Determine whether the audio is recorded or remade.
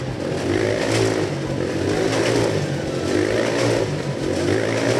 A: recorded